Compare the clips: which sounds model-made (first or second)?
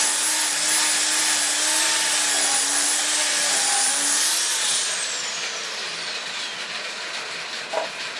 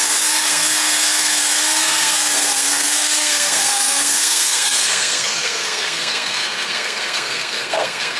second